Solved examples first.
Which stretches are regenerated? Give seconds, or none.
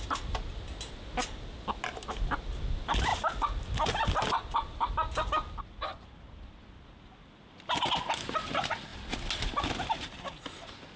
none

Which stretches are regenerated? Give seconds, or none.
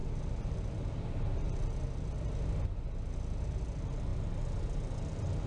none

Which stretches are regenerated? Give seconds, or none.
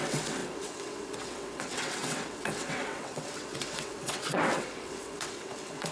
0.0-5.9 (vocoder, WaveNeXt)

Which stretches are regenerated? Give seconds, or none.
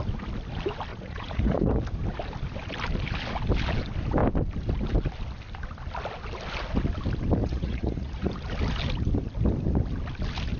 0.9-1.8 (vocoder, Vocos); 7.4-8.3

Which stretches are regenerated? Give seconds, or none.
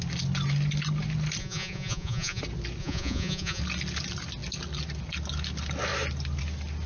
1.4-2.4 (vocoder, Vocos); 2.8-3.6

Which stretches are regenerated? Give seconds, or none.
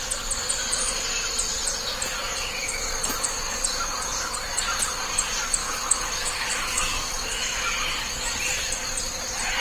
5.6-7.7 (autoencoder, DAC-VAE)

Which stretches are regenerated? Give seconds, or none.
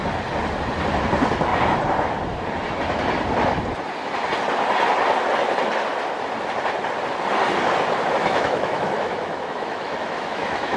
8.2-10.8 (autoencoder, DAC-VAE)